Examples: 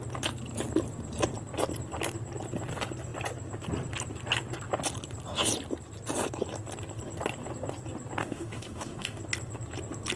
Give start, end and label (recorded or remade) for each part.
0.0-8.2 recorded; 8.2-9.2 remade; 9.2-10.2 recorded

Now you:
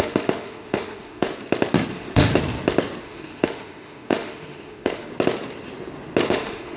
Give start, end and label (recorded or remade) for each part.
0.0-1.3 remade; 1.3-1.9 recorded; 1.9-2.3 remade; 2.3-3.0 recorded; 3.0-5.1 remade; 5.1-6.3 recorded; 6.3-6.8 remade

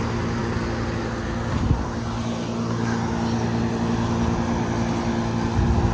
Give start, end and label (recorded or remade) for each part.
0.0-5.9 recorded